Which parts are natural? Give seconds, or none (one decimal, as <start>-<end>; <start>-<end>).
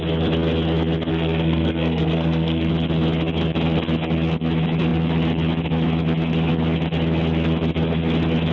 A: 0.0-1.1; 2.7-8.5